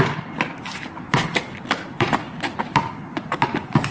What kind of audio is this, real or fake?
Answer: fake